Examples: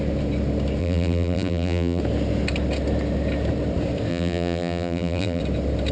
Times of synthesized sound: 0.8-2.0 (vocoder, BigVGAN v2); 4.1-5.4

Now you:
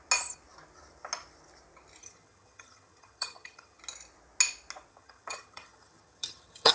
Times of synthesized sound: 2.0-3.8 (vocoder, HiFi-GAN); 4.9-6.7

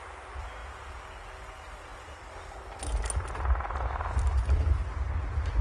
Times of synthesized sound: none